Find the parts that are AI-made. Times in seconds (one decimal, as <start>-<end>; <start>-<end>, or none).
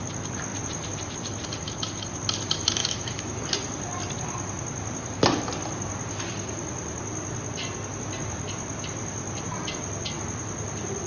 2.8-3.4